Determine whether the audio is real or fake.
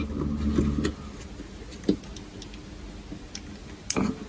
real